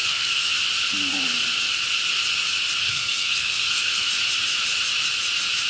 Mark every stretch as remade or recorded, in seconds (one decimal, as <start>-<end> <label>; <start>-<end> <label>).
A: 0.0-0.5 remade; 0.5-2.8 recorded; 2.8-4.1 remade; 4.1-5.7 recorded